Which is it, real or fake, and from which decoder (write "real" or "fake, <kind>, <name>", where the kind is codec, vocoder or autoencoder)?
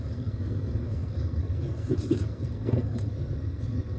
fake, codec, SNAC